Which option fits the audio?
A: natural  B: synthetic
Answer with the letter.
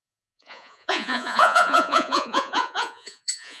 B